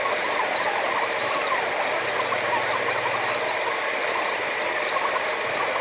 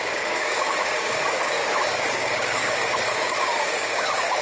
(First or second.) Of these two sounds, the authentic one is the first